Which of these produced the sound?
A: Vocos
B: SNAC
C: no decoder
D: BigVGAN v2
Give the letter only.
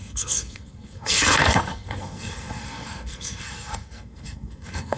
B